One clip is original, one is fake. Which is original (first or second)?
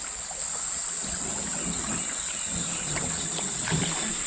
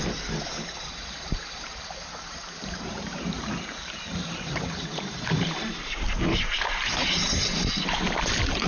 first